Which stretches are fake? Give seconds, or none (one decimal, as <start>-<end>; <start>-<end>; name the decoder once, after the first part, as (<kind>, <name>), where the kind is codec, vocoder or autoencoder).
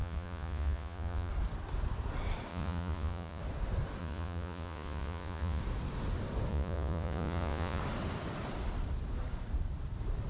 0.0-1.3 (vocoder, Vocos); 2.5-3.4; 4.0-5.6; 6.5-7.8